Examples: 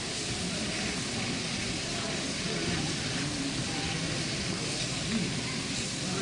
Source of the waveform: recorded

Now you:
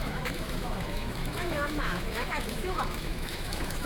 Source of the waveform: remade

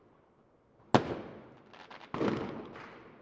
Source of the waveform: recorded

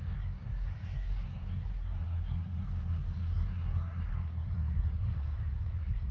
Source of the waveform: remade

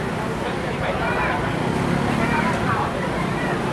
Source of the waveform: remade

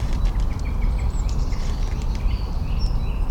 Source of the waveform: recorded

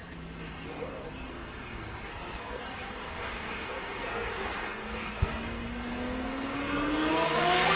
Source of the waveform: remade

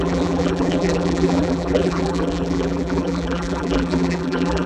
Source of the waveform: remade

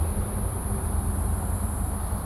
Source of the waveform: recorded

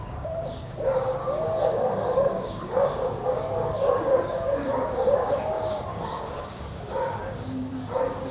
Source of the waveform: remade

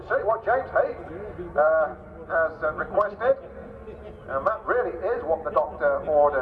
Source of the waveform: recorded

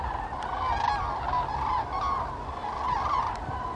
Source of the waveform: recorded